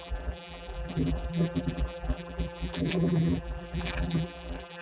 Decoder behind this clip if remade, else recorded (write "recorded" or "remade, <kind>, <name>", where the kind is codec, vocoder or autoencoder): remade, vocoder, BigVGAN v2